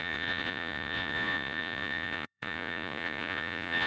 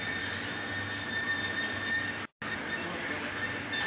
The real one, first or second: second